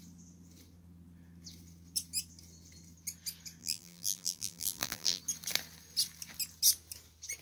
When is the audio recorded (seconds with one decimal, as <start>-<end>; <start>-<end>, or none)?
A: 0.0-3.6; 5.2-7.4